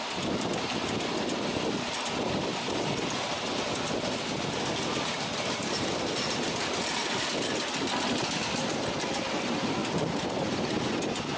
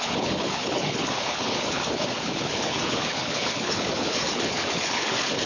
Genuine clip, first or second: first